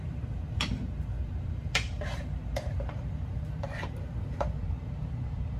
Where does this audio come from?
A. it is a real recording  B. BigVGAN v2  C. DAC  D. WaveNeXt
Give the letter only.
B